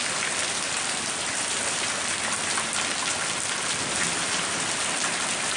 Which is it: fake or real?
real